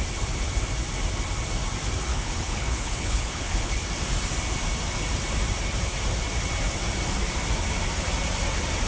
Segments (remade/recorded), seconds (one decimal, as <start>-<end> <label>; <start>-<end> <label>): 0.0-2.1 recorded; 2.1-3.7 remade; 3.7-8.9 recorded